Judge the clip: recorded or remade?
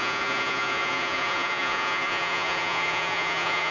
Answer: remade